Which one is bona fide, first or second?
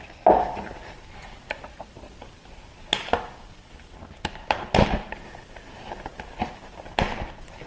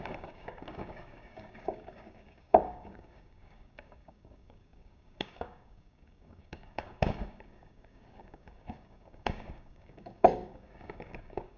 first